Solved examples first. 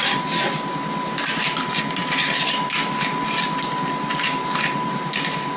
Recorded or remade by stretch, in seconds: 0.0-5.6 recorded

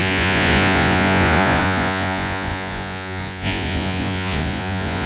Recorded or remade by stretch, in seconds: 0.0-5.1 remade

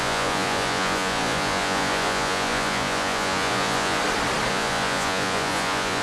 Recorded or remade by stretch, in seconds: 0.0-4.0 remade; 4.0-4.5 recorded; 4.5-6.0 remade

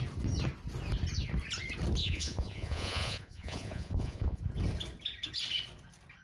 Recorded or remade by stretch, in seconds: 0.0-2.0 recorded; 2.0-4.4 remade; 4.4-6.2 recorded

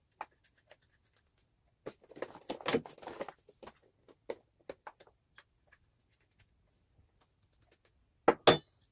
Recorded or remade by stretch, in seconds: 0.0-8.9 recorded